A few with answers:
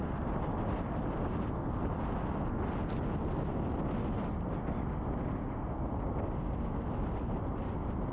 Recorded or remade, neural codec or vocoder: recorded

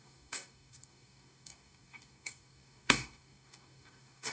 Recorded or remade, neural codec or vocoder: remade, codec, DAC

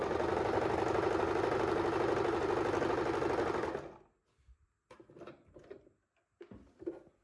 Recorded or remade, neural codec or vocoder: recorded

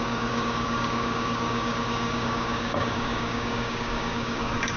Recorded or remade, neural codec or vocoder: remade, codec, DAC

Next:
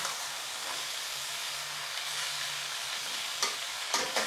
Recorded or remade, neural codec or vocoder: remade, codec, DAC